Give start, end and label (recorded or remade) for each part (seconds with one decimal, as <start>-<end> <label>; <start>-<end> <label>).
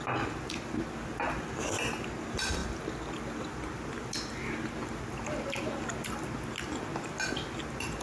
0.0-8.0 recorded